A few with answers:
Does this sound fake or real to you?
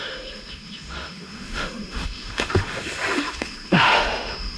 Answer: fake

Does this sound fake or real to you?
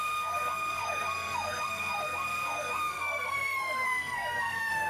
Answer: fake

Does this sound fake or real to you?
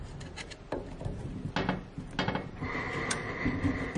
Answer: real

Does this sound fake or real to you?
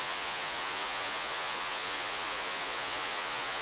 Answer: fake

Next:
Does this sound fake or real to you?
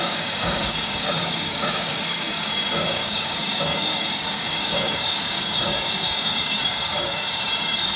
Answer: fake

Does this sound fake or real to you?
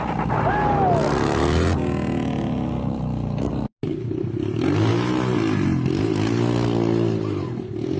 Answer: real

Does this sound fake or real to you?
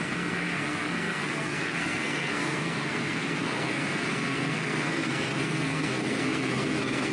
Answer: fake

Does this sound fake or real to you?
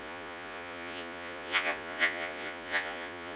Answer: fake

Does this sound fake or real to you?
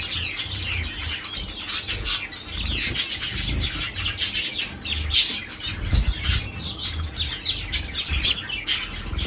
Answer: real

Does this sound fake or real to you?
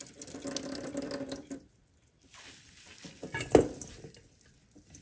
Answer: real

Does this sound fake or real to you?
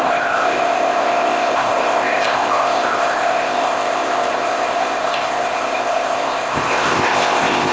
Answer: fake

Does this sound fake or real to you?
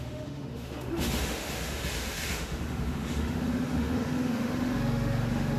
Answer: fake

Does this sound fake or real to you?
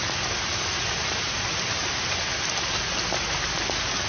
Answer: real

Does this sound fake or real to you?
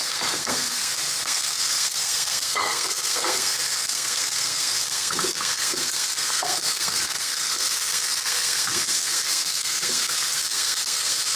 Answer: fake